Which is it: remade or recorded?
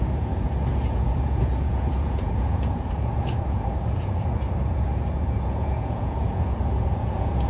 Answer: remade